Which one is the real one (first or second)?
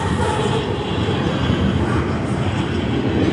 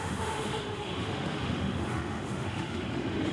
first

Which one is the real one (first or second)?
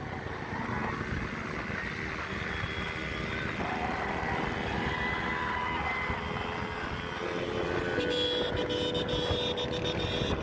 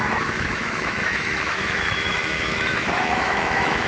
first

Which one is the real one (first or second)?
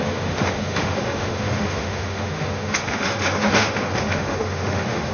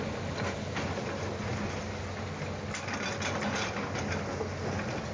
second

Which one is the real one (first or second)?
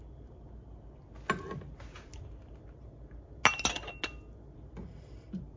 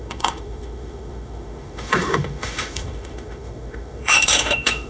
first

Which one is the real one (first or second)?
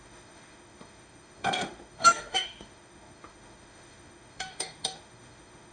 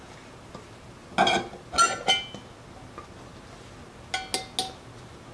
second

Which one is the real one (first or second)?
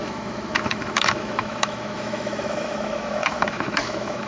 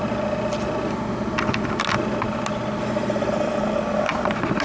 second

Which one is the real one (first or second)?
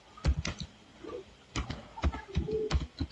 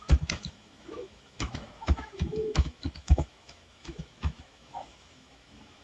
first